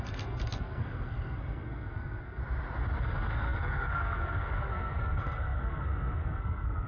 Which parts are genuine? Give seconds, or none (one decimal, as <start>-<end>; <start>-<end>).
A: 2.4-3.0